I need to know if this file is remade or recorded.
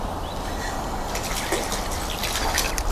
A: recorded